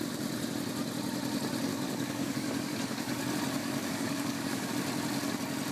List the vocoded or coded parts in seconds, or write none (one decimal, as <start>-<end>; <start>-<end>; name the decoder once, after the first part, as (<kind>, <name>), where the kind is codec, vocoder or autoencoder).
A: 1.7-3.2 (codec, DAC); 3.6-4.7